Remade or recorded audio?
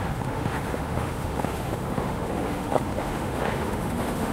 remade